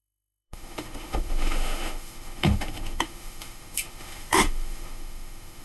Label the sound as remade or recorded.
remade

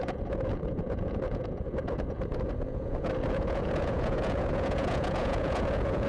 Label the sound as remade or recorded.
remade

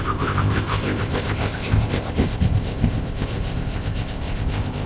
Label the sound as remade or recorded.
remade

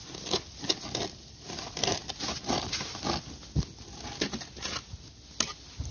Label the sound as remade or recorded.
recorded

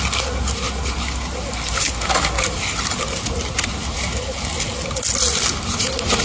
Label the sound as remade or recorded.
recorded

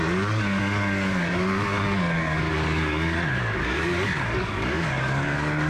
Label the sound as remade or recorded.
remade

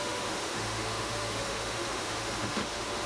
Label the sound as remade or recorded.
remade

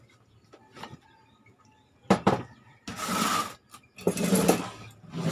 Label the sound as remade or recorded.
recorded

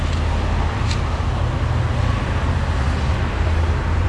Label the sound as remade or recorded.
remade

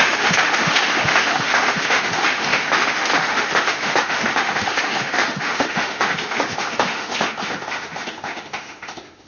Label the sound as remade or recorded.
remade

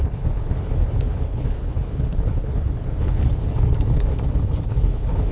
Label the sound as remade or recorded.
remade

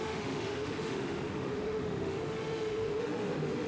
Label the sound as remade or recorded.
remade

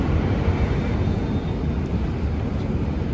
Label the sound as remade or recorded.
recorded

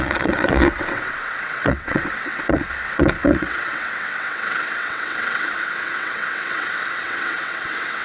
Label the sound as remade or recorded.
remade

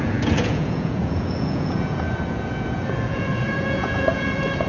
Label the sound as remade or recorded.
remade